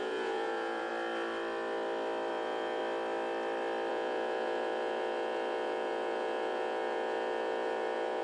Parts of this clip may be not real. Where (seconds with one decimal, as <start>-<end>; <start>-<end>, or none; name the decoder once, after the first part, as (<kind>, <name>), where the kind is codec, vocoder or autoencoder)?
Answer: 0.0-0.9 (vocoder, Vocos); 2.3-2.8; 3.9-8.2